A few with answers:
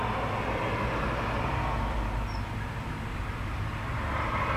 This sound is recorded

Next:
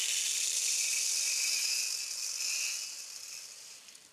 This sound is recorded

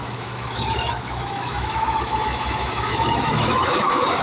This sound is remade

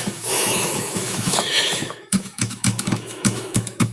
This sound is remade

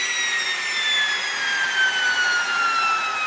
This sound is recorded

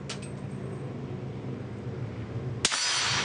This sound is recorded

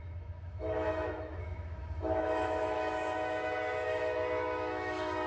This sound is remade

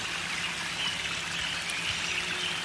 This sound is recorded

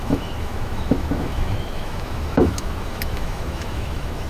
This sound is remade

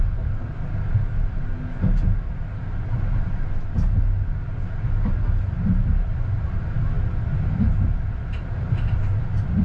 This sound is recorded